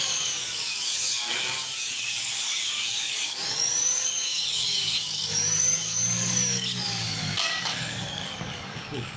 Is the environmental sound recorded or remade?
remade